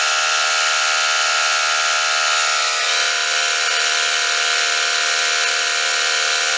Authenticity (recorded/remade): recorded